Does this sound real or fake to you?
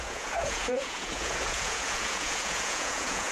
fake